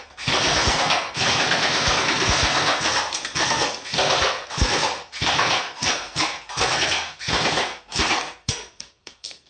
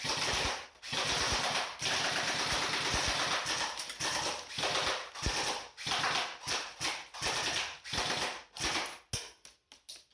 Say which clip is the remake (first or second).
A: first